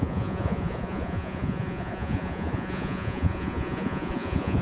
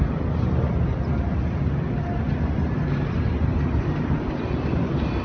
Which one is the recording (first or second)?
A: second